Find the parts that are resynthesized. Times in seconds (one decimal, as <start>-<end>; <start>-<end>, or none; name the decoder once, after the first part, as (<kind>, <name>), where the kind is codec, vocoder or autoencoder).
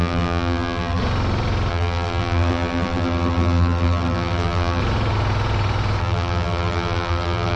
0.0-1.0 (vocoder, BigVGAN v2); 1.7-4.8; 6.0-7.6